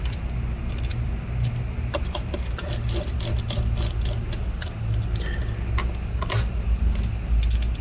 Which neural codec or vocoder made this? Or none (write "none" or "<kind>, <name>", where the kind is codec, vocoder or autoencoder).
none